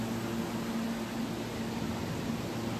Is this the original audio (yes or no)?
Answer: yes